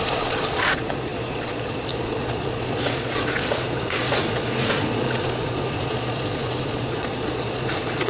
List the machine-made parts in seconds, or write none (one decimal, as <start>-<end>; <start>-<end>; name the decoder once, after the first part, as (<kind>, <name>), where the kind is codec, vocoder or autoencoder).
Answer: 0.0-8.1 (vocoder, Vocos)